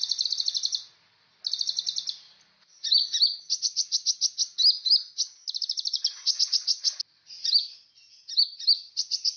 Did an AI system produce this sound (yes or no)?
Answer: no